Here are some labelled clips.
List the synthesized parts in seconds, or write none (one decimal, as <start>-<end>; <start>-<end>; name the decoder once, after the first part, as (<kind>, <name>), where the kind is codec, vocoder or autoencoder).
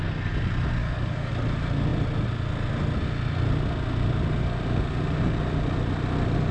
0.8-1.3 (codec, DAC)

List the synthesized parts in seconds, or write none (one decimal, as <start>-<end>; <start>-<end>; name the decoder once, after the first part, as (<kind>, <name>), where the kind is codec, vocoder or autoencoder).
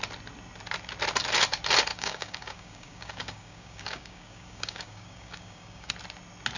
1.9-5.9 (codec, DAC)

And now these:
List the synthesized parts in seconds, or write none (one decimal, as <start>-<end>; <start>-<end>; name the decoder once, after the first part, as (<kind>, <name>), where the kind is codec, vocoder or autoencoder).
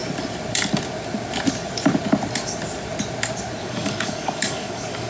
3.6-5.1 (codec, DAC)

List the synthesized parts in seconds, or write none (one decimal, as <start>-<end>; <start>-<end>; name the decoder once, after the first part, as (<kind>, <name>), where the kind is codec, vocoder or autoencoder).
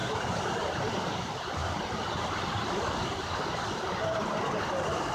none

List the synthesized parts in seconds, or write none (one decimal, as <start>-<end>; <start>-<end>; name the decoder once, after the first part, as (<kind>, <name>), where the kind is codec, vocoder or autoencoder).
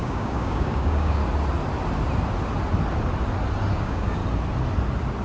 0.0-1.2 (codec, DAC); 3.7-4.2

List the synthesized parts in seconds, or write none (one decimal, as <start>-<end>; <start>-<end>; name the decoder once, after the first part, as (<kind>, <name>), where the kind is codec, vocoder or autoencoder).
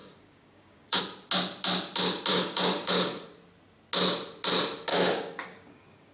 0.0-1.0 (codec, DAC); 2.3-3.3; 4.9-6.1